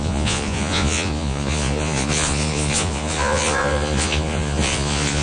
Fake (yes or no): yes